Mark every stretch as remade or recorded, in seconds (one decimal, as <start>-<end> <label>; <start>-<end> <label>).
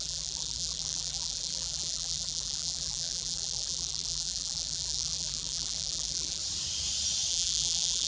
0.0-6.4 remade; 6.4-7.3 recorded; 7.3-8.1 remade